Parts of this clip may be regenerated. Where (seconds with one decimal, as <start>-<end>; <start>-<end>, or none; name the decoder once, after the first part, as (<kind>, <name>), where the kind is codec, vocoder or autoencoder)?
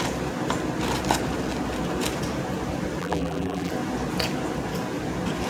3.0-3.7 (vocoder, BigVGAN v2)